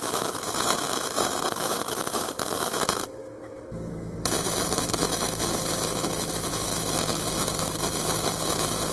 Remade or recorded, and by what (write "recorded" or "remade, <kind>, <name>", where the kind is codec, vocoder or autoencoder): remade, autoencoder, DAC-VAE